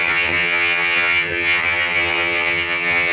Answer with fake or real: fake